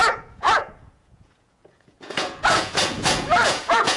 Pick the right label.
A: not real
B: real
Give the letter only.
A